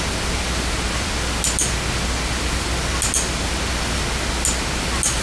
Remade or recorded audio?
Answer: recorded